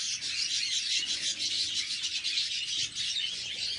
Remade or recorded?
remade